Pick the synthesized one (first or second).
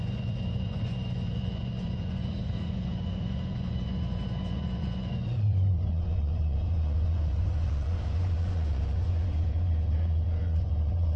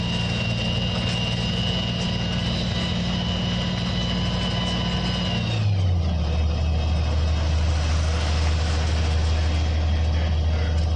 first